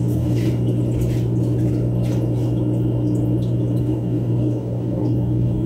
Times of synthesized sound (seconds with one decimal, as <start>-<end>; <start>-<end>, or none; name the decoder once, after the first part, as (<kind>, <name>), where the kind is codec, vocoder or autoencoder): 0.0-0.4 (codec, DAC); 3.8-5.7